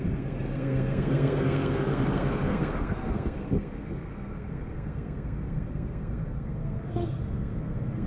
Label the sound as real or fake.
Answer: fake